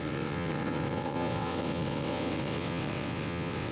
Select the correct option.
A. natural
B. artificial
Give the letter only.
B